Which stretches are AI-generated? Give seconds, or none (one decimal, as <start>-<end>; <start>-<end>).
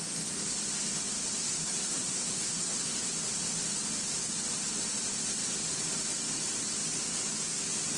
1.4-3.1